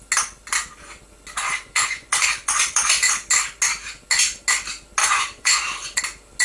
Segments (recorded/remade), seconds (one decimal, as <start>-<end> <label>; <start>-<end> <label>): 0.0-1.5 recorded; 1.5-3.1 remade; 3.1-5.0 recorded; 5.0-6.0 remade; 6.0-6.4 recorded